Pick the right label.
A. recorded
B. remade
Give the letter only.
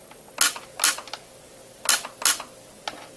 A